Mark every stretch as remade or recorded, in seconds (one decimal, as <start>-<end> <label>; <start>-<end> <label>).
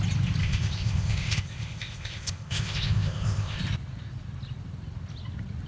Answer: 0.0-0.4 recorded; 0.4-3.6 remade; 3.6-5.7 recorded